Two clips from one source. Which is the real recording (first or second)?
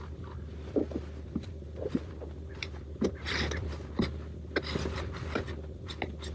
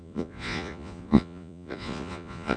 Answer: first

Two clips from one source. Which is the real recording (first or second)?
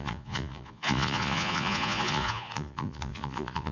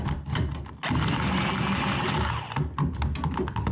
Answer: second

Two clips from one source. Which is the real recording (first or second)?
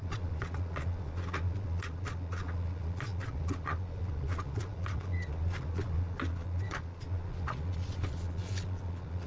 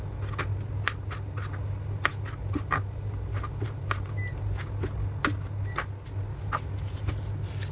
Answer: second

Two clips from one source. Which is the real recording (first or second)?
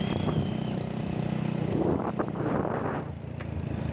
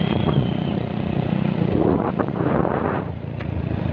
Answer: first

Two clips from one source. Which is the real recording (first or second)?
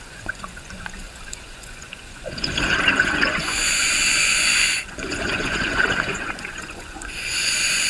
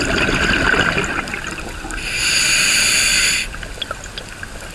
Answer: second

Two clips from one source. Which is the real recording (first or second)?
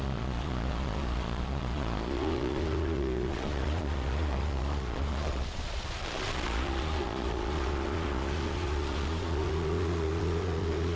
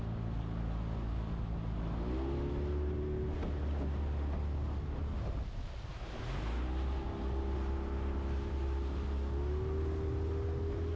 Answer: second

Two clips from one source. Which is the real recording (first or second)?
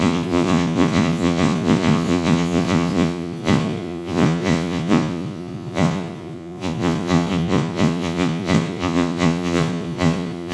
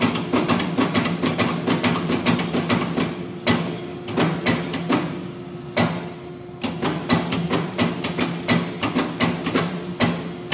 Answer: second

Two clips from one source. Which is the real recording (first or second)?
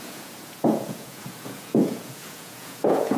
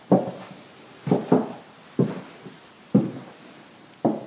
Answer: second